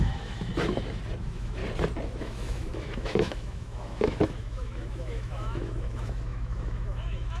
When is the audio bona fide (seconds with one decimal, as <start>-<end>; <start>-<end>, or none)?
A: 0.5-1.2; 1.6-2.2